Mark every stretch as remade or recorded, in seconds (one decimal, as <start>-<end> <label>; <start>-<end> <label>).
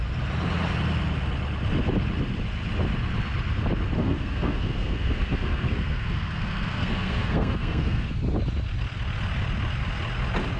0.0-4.0 recorded; 4.0-8.1 remade; 8.1-10.6 recorded